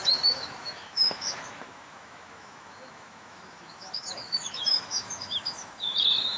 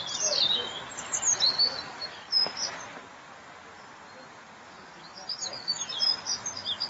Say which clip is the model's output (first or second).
first